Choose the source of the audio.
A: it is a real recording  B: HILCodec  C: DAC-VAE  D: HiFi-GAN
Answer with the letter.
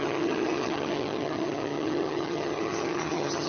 D